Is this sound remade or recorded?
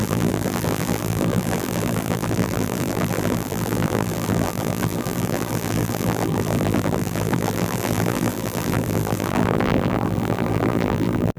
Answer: remade